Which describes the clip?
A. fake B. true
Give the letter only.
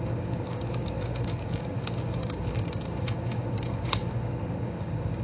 A